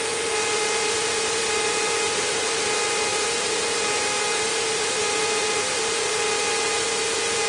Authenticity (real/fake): real